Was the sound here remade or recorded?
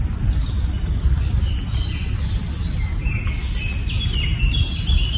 recorded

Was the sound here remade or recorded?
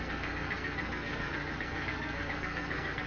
remade